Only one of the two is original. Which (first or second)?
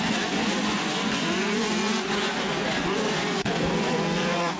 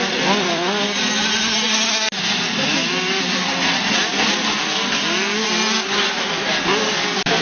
second